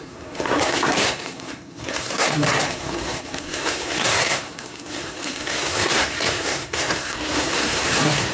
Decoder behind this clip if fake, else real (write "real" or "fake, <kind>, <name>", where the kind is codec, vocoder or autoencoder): fake, codec, SNAC